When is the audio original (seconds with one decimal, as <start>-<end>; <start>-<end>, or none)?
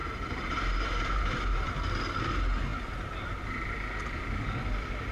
1.7-5.1